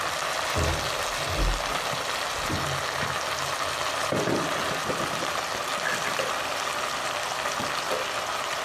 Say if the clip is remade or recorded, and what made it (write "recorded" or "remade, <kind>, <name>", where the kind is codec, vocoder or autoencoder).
recorded